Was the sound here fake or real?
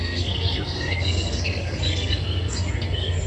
fake